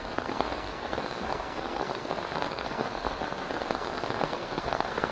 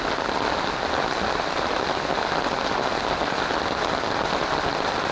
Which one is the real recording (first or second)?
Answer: second